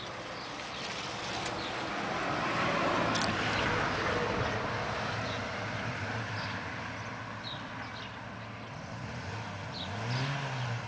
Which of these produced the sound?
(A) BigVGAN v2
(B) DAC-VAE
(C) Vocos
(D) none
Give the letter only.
D